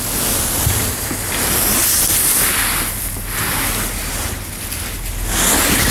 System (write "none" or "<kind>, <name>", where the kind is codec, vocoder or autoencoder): none